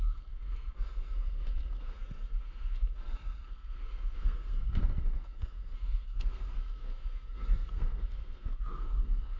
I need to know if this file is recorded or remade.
remade